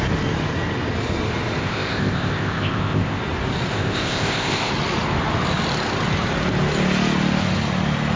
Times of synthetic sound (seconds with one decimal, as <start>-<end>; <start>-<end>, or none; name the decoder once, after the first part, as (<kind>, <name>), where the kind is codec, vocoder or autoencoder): 1.6-3.2 (codec, ZipCodec); 3.7-4.7